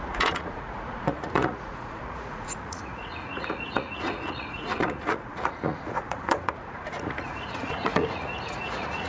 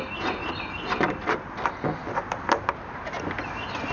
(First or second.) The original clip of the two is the second